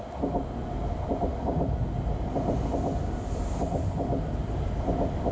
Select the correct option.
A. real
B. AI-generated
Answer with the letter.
A